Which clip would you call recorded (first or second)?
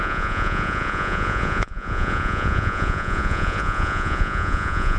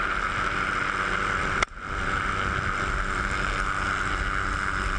second